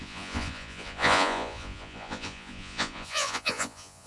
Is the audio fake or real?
fake